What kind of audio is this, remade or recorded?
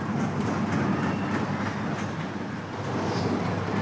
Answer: recorded